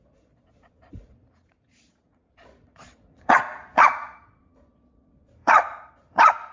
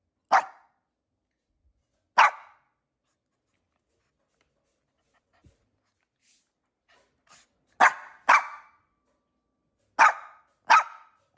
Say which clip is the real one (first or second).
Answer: second